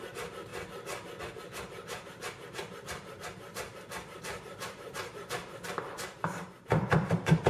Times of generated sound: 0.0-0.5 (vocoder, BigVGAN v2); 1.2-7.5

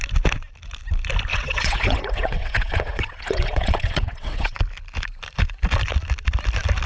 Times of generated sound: 1.3-4.6 (vocoder, WaveNeXt)